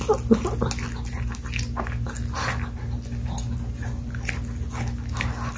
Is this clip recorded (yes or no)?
yes